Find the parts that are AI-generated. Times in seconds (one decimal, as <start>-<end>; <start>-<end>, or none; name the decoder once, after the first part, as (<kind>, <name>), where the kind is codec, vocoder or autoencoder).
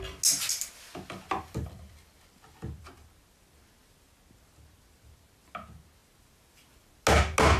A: none